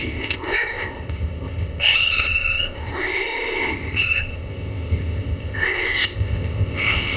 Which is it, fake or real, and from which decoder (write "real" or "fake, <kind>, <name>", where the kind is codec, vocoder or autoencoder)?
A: fake, codec, ZipCodec